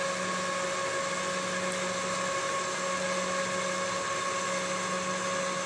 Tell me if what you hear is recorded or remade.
recorded